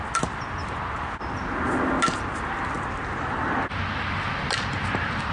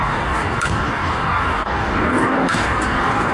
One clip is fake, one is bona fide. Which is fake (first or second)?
second